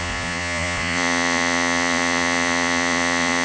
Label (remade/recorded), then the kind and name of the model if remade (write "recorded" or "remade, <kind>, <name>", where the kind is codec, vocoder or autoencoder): remade, vocoder, Vocos